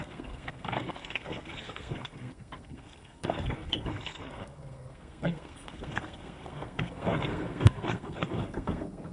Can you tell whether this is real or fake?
fake